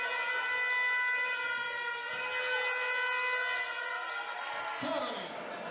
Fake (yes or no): no